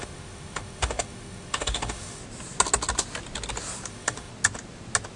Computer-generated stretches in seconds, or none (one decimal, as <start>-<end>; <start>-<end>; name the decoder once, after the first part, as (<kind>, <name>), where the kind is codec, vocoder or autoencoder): 0.0-2.2 (autoencoder, DAC-VAE); 3.9-4.3